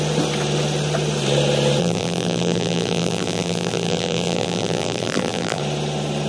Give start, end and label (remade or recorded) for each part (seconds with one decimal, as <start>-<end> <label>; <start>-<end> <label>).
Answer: 0.0-1.8 recorded; 1.8-5.6 remade; 5.6-6.3 recorded